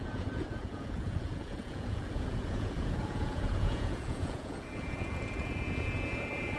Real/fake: fake